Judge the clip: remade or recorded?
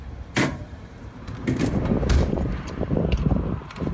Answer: remade